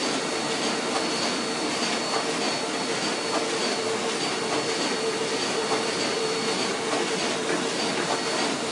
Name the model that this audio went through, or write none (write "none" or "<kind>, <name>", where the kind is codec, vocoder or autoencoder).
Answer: none